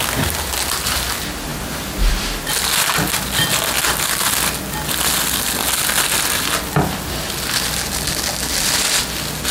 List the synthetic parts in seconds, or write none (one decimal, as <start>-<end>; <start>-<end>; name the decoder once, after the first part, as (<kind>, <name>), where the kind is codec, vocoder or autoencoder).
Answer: none